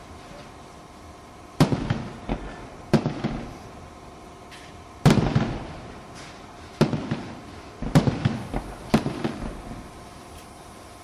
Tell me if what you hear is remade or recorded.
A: recorded